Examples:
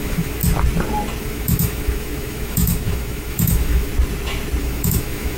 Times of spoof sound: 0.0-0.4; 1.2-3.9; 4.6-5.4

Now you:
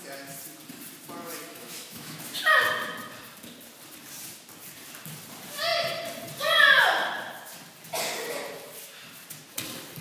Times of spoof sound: 1.5-2.2

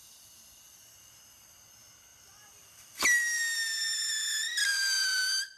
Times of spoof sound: none

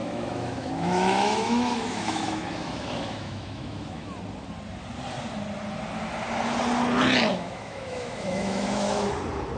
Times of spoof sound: 0.0-4.2; 7.3-9.1

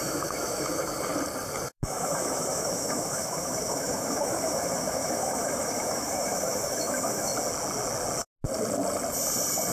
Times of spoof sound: 0.0-1.1; 1.7-7.3

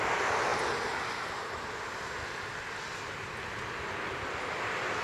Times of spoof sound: none